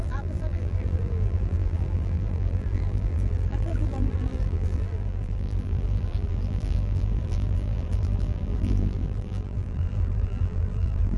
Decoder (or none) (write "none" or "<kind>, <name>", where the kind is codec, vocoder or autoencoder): vocoder, BigVGAN v2